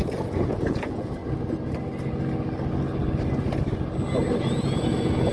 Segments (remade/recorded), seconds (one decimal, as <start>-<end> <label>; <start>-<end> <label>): 0.0-1.2 remade; 1.2-4.4 recorded; 4.4-5.3 remade